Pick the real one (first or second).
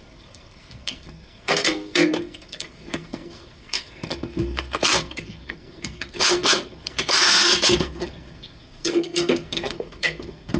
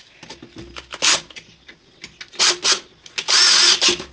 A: second